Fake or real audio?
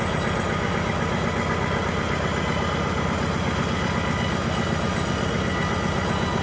real